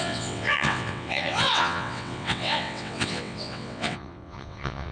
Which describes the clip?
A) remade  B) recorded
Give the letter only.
A